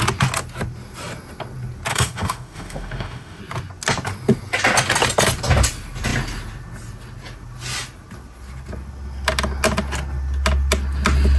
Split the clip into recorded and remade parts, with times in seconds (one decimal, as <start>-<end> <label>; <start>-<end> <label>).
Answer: 0.0-1.9 recorded; 1.9-3.4 remade; 3.4-11.4 recorded